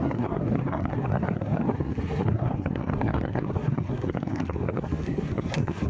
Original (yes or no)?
no